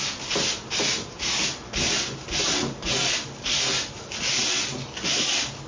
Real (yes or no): yes